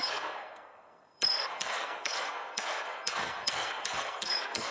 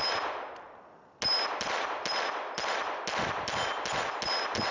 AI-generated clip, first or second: first